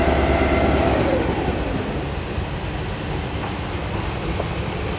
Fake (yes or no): no